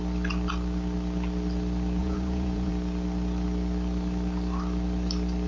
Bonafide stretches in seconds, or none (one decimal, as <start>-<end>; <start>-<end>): 0.0-2.0; 2.7-5.5